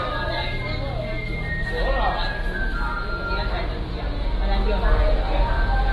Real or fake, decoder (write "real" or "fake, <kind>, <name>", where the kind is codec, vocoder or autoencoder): real